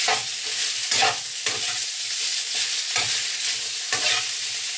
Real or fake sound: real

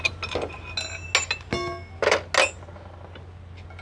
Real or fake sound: real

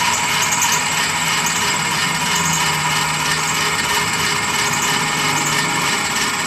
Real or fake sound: real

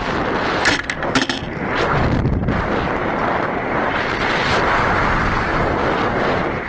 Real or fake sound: real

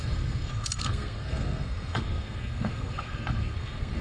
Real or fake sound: fake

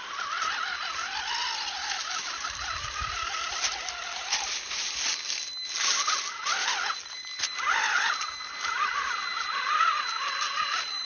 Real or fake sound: real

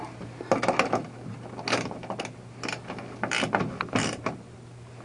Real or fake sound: real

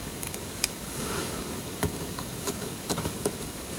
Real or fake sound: fake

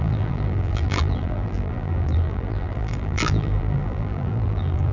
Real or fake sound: fake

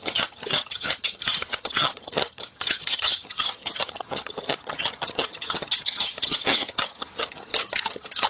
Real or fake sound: fake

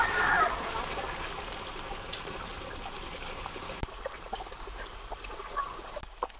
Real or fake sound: real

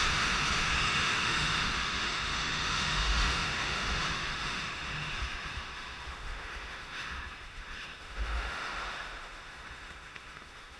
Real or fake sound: fake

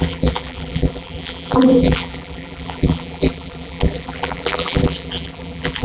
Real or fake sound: fake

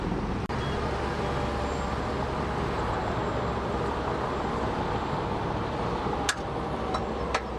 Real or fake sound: real